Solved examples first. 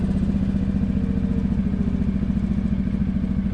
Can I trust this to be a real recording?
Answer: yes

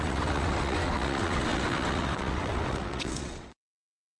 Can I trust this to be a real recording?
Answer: no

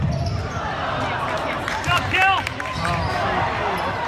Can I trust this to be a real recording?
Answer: yes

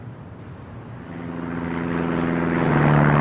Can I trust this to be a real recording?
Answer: yes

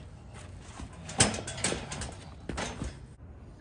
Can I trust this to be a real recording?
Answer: yes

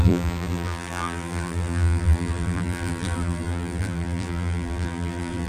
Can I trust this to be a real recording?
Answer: no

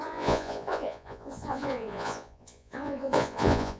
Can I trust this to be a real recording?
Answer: no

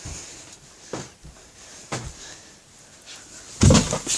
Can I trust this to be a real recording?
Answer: yes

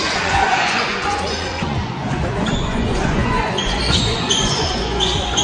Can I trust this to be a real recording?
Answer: no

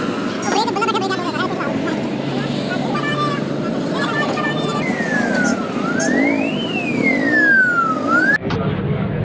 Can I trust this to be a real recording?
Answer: yes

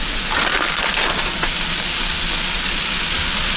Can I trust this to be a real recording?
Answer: yes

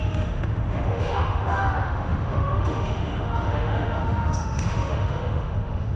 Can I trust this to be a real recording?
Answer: no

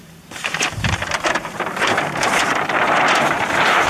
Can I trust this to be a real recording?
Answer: no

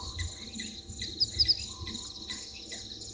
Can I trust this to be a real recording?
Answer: yes